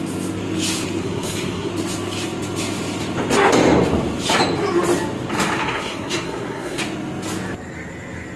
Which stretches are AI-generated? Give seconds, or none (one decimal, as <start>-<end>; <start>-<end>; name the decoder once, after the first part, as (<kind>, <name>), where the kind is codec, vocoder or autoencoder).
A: 1.0-1.7 (codec, SNAC); 5.6-6.8